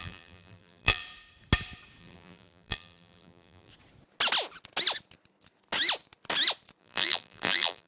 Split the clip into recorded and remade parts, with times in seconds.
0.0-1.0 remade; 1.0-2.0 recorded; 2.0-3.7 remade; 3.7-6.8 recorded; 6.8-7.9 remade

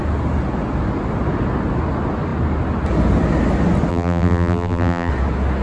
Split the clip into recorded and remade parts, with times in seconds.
0.0-3.9 recorded; 3.9-5.1 remade; 5.1-5.6 recorded